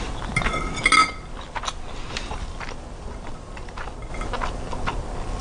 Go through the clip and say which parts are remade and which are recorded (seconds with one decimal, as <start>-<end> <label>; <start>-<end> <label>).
0.0-5.4 recorded